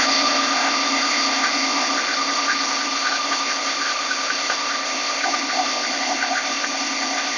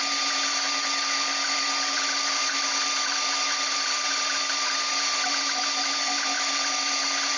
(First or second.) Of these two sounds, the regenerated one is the first